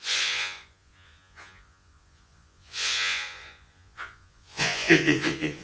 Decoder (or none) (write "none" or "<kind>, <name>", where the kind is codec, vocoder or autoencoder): vocoder, Vocos